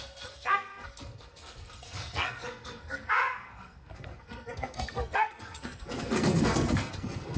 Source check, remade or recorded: remade